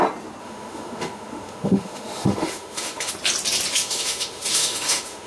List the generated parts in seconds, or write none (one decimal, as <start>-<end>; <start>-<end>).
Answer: 0.4-3.1; 3.7-5.3